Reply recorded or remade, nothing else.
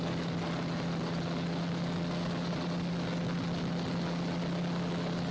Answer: recorded